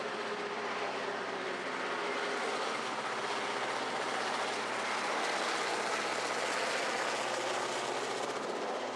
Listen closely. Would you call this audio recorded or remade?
recorded